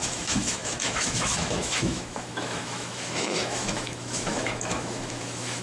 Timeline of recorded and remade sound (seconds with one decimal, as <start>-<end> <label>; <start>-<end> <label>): 0.0-5.6 remade